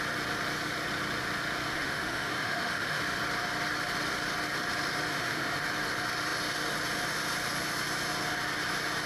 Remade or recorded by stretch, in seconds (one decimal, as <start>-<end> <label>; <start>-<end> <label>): 0.0-1.7 recorded; 1.7-3.0 remade; 3.0-5.1 recorded; 5.1-5.6 remade; 5.6-9.1 recorded